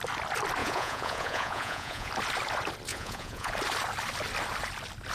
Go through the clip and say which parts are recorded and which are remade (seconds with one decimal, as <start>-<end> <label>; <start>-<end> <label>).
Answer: 0.0-0.6 recorded; 0.6-2.1 remade; 2.1-2.9 recorded; 2.9-3.5 remade; 3.5-5.1 recorded